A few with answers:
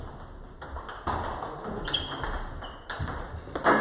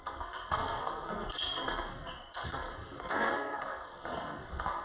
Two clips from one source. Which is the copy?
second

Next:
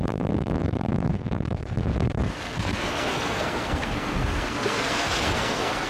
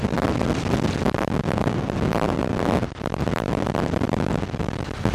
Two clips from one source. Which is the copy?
first